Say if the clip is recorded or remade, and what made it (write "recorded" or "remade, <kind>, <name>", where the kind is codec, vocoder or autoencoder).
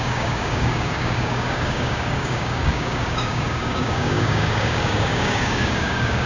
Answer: remade, codec, DAC